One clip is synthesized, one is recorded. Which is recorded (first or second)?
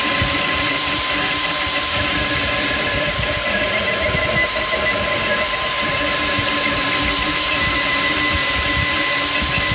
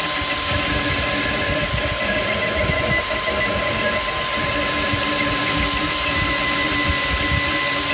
second